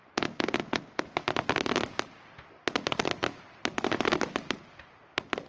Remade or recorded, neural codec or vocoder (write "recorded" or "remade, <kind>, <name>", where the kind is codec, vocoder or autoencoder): recorded